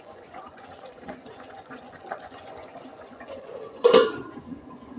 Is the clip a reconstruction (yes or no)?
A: yes